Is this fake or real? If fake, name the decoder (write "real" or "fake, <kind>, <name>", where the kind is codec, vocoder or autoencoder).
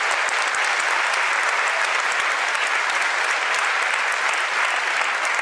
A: real